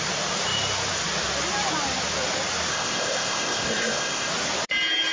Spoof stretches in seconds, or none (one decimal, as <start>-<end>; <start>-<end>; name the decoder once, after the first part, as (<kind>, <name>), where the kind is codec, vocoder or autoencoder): 2.7-4.3 (codec, ZipCodec)